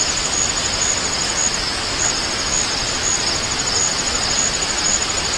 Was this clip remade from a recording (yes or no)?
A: no